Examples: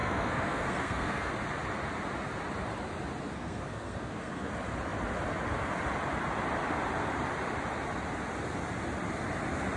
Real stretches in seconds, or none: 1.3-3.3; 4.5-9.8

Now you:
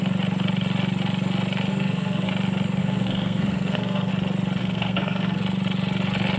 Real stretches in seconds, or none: 0.0-1.7; 2.3-2.8; 4.1-4.6; 5.4-6.4

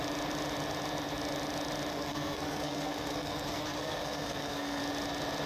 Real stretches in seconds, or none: 0.0-1.9; 4.8-5.5

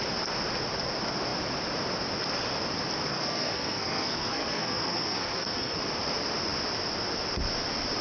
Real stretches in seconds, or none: 0.0-3.1; 5.8-8.0

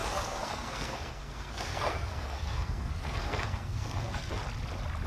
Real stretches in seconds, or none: 4.4-5.1

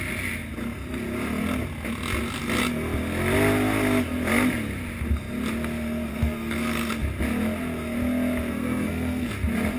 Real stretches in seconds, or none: 0.0-6.1; 6.9-8.5; 9.3-9.8

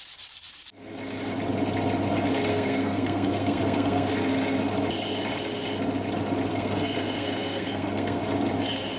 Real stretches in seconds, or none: 0.0-2.5; 4.1-6.5; 8.2-9.0